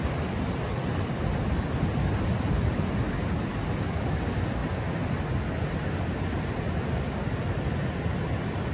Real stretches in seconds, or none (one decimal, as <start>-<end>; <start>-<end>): 0.0-8.7